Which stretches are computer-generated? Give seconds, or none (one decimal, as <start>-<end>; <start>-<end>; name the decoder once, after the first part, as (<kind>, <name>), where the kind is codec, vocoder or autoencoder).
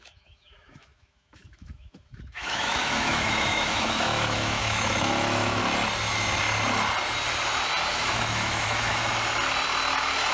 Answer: 0.0-5.6 (autoencoder, DAC-VAE); 7.9-9.0